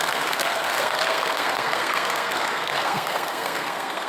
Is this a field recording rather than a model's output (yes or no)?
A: no